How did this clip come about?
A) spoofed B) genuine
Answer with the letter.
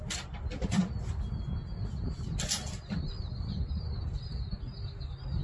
B